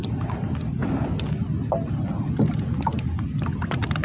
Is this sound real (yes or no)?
yes